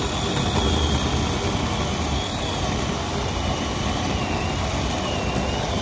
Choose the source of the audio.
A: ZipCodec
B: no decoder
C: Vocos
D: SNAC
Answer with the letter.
B